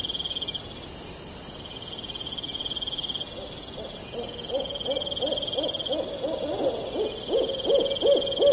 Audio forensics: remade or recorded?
recorded